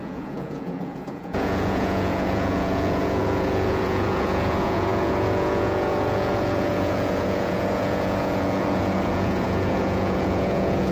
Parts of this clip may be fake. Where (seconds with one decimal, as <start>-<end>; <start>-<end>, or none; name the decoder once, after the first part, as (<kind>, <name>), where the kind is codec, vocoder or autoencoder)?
0.0-10.9 (vocoder, Vocos)